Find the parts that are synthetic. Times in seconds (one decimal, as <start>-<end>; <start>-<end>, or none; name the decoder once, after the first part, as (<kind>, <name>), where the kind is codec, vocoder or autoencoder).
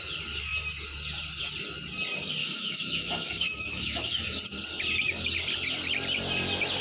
2.4-4.4 (autoencoder, DAC-VAE)